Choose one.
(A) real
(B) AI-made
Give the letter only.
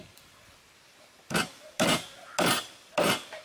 A